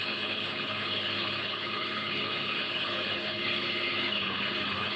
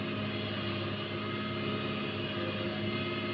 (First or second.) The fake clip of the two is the first